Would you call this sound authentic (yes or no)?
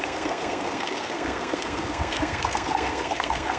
no